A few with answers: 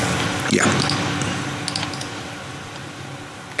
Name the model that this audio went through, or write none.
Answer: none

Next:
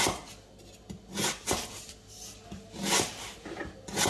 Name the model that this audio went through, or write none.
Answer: none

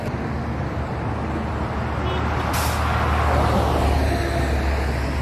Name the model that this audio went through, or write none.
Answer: none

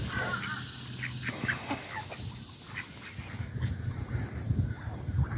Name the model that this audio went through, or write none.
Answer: none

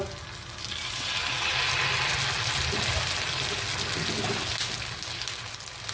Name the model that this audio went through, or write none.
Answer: none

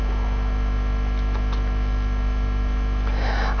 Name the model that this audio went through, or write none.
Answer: none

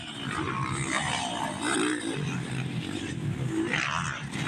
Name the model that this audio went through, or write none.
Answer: none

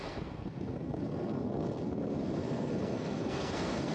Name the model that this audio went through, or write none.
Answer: codec, SNAC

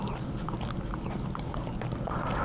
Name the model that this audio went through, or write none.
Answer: none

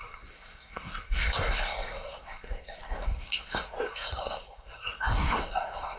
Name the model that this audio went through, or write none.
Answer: codec, SNAC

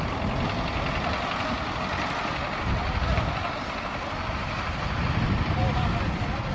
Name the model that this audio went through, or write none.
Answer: none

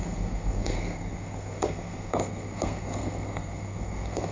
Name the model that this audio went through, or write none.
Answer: codec, SNAC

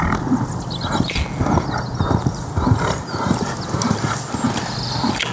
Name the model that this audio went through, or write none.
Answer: none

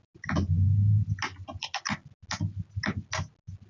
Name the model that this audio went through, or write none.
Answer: none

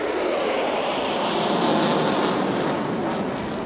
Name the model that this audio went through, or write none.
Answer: none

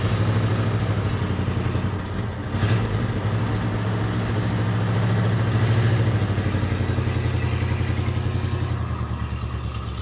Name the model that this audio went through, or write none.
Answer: none